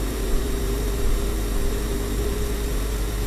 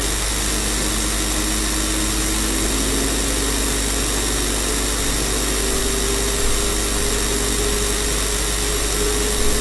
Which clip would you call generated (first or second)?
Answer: first